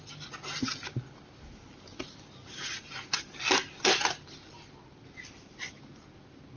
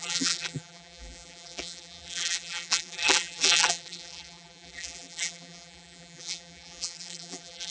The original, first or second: first